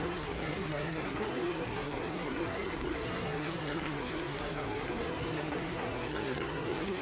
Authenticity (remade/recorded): remade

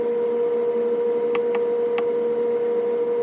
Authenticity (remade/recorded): recorded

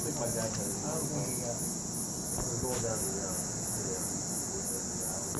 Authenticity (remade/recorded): recorded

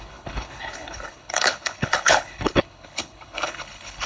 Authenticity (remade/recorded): remade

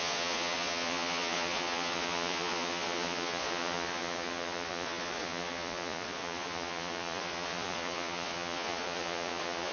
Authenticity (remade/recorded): remade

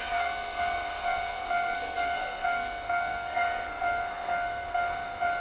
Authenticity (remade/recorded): remade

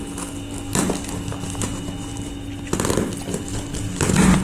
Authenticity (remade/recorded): recorded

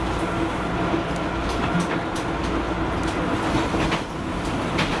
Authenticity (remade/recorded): recorded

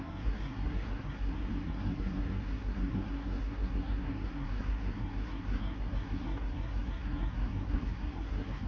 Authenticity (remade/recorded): remade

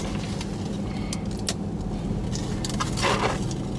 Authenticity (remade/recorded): recorded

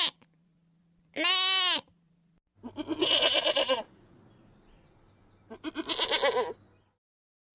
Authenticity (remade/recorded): recorded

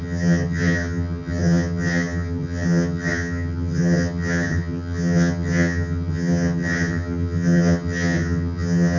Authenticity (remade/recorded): remade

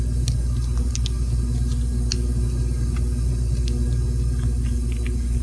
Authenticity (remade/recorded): recorded